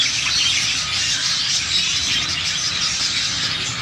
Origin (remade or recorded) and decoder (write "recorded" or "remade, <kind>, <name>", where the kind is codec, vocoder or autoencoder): recorded